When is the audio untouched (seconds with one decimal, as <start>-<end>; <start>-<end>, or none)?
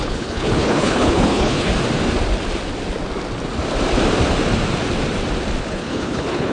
1.7-5.6